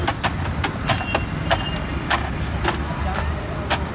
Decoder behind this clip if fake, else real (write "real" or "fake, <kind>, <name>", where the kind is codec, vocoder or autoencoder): real